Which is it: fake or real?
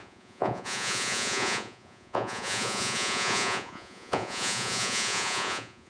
fake